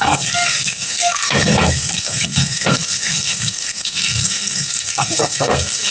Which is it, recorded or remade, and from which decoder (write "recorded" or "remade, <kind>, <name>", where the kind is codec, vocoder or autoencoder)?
remade, codec, SNAC